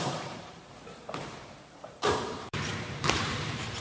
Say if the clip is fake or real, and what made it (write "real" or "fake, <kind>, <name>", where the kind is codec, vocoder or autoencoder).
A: fake, vocoder, BigVGAN v2